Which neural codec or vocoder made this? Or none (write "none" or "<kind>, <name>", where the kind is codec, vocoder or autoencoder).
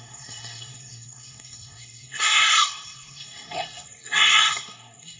codec, SNAC